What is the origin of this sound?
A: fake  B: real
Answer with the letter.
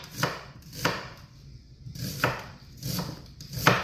A